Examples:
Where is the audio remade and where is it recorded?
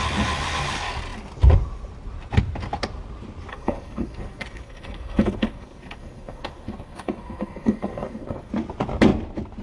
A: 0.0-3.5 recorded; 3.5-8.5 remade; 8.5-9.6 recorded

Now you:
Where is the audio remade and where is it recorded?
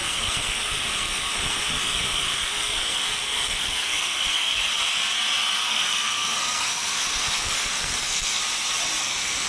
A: 0.0-4.7 remade; 4.7-5.7 recorded; 5.7-8.4 remade; 8.4-9.0 recorded; 9.0-9.5 remade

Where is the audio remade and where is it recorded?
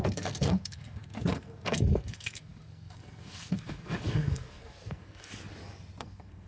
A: 0.0-5.3 remade; 5.3-6.0 recorded; 6.0-6.5 remade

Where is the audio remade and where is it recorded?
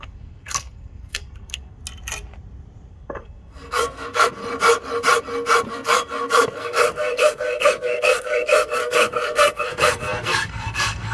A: 0.0-1.8 remade; 1.8-2.9 recorded; 2.9-4.4 remade; 4.4-5.7 recorded; 5.7-11.1 remade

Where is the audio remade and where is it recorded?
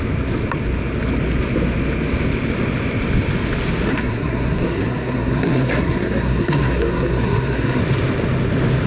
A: 0.0-3.9 recorded; 3.9-7.8 remade; 7.8-8.9 recorded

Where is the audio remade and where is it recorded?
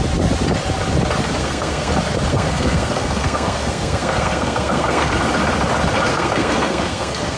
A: 0.0-1.4 recorded; 1.4-1.9 remade; 1.9-2.3 recorded; 2.3-5.1 remade; 5.1-6.1 recorded; 6.1-7.4 remade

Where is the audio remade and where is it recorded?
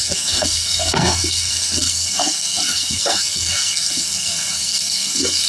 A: 0.0-5.5 remade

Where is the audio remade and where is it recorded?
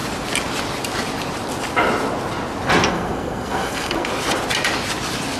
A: 0.0-2.9 recorded; 2.9-4.1 remade; 4.1-5.4 recorded